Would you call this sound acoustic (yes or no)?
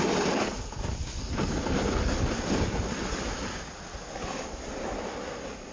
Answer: yes